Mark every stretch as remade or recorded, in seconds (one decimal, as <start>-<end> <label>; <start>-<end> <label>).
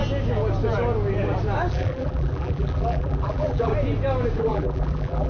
0.0-1.7 recorded; 1.7-3.7 remade; 3.7-4.4 recorded; 4.4-5.3 remade